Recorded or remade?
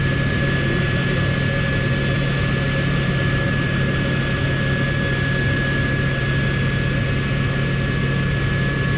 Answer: recorded